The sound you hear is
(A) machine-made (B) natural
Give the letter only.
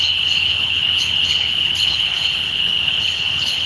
A